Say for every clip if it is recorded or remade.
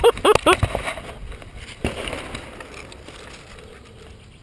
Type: recorded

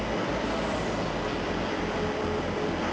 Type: recorded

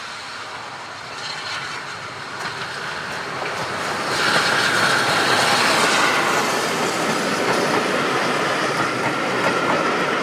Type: recorded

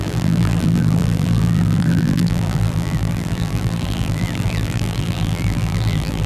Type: remade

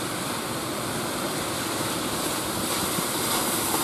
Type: remade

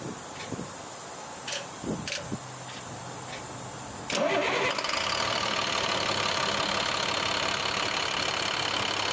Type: recorded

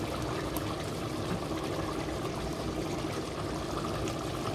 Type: recorded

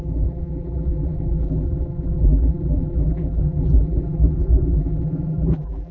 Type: remade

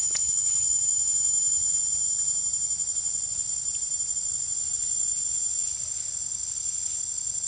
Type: recorded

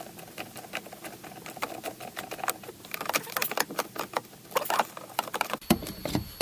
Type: remade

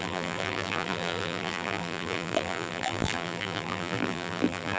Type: remade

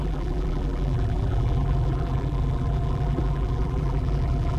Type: remade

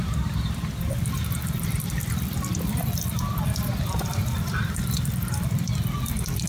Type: remade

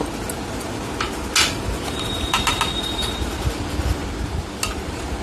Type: recorded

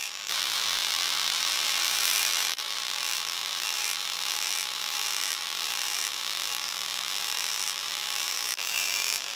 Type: remade